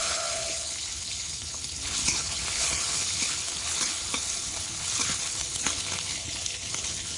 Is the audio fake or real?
fake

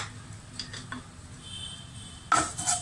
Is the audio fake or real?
real